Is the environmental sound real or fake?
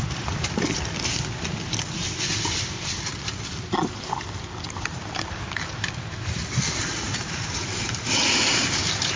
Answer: real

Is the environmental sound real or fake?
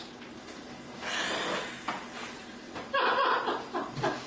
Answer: real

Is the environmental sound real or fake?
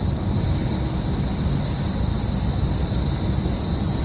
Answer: real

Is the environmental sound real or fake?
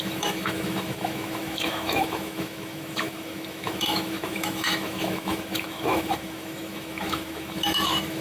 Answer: fake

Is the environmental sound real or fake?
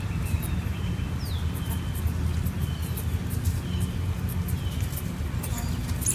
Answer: real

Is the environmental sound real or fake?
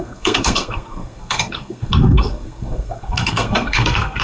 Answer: fake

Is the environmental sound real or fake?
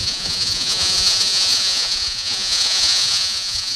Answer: fake